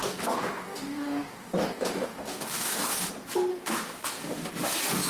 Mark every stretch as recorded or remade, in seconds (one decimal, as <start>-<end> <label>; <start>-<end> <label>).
0.0-3.1 remade; 3.1-3.5 recorded; 3.5-4.5 remade; 4.5-5.1 recorded